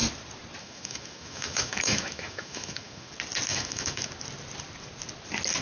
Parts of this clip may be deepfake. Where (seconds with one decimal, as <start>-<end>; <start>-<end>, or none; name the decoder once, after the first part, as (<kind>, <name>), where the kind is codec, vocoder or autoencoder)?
0.6-3.1 (autoencoder, DAC-VAE); 3.5-4.1